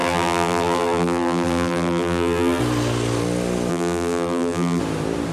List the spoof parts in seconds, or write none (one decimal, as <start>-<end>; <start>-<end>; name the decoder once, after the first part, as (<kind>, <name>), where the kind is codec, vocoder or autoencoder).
0.0-2.6 (vocoder, BigVGAN v2); 3.7-4.8